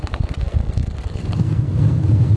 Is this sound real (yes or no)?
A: no